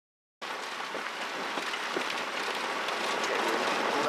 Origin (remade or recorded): recorded